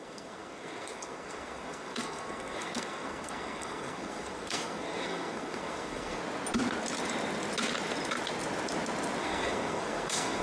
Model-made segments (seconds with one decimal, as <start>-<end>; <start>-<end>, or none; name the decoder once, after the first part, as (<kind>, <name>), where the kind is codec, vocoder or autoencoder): 0.0-6.2 (codec, SNAC); 9.2-10.4